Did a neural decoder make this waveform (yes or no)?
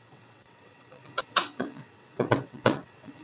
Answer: yes